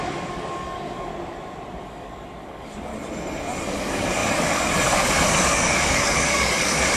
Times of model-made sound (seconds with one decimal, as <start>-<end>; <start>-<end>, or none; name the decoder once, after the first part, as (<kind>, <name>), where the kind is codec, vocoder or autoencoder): 0.0-1.1 (codec, DAC); 1.8-2.9; 3.6-7.0